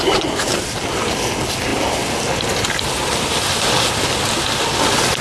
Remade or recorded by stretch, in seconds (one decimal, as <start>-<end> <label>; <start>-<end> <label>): 0.0-5.2 recorded